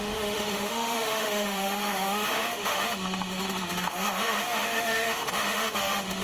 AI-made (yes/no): yes